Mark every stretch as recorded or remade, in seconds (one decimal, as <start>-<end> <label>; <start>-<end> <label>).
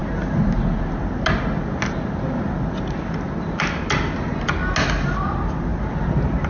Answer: 0.0-6.5 recorded